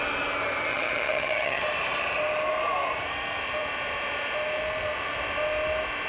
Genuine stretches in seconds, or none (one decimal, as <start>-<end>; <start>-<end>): 0.0-0.7; 1.6-6.1